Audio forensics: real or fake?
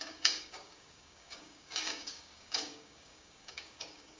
fake